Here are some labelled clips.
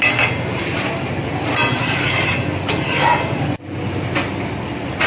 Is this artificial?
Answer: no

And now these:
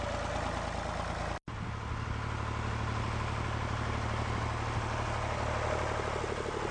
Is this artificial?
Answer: no